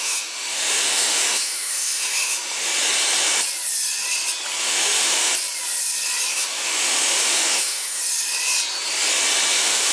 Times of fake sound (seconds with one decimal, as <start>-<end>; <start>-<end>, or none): 0.0-2.7; 4.6-5.3; 6.3-8.0; 9.5-9.9